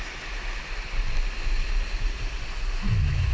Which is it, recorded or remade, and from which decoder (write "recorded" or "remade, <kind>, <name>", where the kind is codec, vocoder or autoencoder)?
recorded